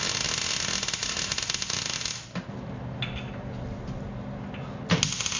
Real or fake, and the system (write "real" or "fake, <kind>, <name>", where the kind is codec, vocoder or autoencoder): real